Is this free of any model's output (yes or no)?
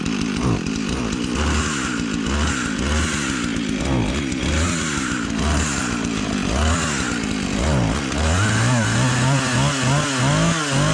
yes